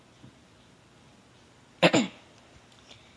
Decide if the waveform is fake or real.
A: real